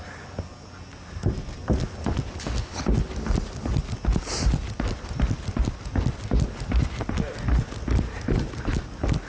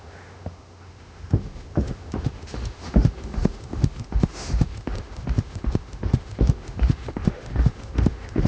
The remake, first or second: second